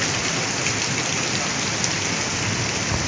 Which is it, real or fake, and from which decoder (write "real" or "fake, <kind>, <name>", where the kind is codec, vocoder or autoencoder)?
real